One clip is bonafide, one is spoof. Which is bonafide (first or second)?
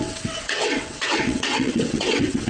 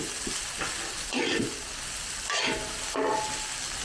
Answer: second